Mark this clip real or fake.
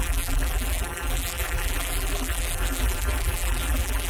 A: fake